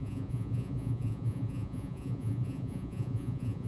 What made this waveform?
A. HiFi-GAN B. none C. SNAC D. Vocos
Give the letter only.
D